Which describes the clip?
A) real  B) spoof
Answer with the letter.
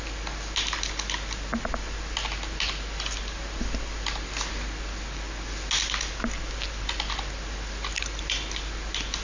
A